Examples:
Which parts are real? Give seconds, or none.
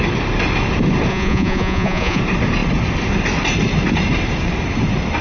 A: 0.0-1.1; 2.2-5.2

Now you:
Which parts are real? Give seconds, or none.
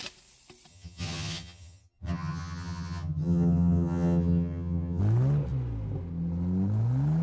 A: 0.0-0.7; 5.0-7.2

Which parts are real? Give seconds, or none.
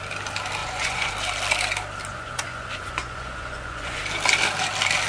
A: 0.0-0.6; 1.1-2.1; 4.0-5.1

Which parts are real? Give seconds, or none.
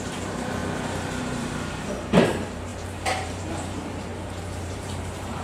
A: 0.6-1.2; 4.1-4.6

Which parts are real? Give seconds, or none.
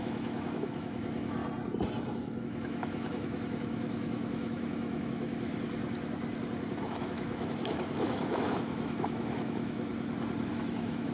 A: 1.4-2.4; 5.5-6.7; 9.9-10.5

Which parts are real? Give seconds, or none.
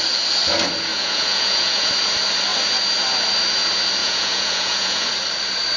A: 0.0-0.9; 1.9-4.0; 5.1-5.8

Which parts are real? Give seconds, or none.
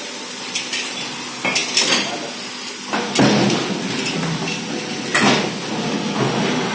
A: 0.0-6.7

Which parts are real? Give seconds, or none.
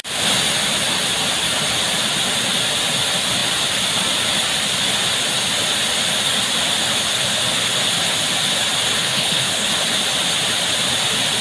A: 0.0-9.0; 9.7-11.4